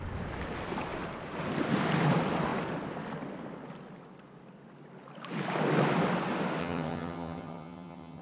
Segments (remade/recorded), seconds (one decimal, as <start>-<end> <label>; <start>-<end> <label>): 0.0-6.6 recorded; 6.6-8.2 remade